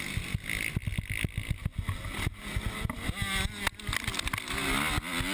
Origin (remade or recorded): recorded